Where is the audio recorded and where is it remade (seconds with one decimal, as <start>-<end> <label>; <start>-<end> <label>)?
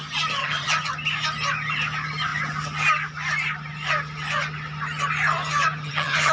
0.0-0.4 recorded; 0.4-0.9 remade; 0.9-5.8 recorded; 5.8-6.3 remade